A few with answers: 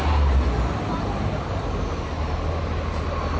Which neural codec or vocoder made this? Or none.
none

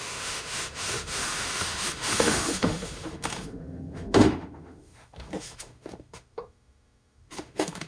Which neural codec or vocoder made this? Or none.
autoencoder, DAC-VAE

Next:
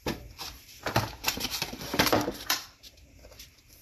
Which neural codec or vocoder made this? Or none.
vocoder, BigVGAN v2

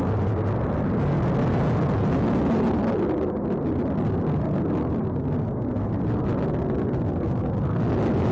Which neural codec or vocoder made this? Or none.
none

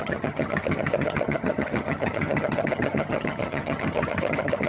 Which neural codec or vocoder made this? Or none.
vocoder, HiFi-GAN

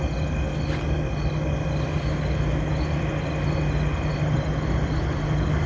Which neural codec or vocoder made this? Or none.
none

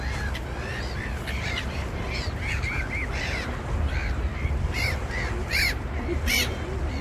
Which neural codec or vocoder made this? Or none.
none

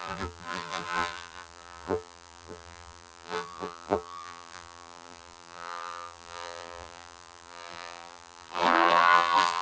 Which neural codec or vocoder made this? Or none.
vocoder, BigVGAN v2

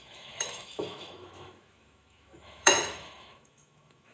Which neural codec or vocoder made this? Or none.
autoencoder, DAC-VAE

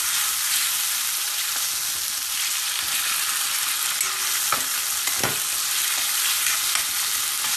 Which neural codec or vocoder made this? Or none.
none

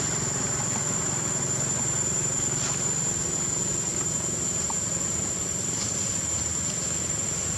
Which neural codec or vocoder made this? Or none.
vocoder, BigVGAN v2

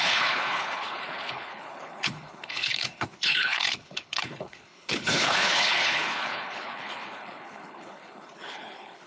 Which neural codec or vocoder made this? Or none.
codec, HILCodec